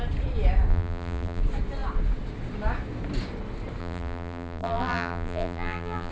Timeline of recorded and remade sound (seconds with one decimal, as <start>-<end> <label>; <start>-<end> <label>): 0.0-0.7 recorded; 0.7-1.4 remade; 1.4-3.8 recorded; 3.8-6.1 remade